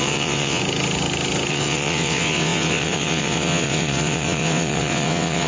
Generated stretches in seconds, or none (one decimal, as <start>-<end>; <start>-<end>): 0.0-0.6; 1.5-5.5